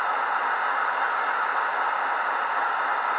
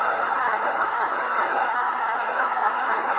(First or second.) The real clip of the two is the first